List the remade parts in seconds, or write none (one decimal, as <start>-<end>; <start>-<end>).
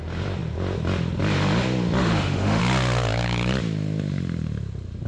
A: 2.0-2.6